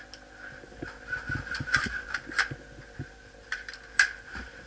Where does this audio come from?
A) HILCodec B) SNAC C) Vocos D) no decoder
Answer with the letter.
D